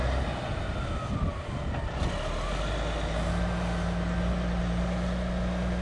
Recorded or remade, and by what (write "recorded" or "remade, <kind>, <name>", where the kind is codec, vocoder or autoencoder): recorded